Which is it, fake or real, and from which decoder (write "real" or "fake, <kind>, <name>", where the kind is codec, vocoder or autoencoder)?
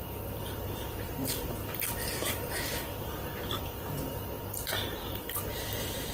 fake, vocoder, BigVGAN v2